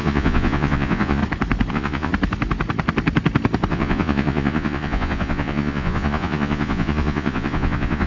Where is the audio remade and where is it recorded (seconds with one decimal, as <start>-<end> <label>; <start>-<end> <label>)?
0.0-1.2 remade; 1.2-1.7 recorded; 1.7-2.1 remade; 2.1-3.7 recorded; 3.7-8.1 remade